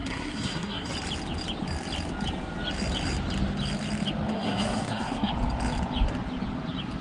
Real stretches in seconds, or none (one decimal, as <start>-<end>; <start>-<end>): 0.9-4.3; 5.3-7.0